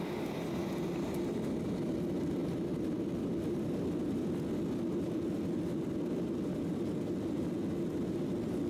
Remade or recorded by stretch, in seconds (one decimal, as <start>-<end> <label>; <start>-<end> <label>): 0.0-8.7 recorded